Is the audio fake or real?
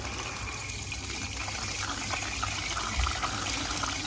real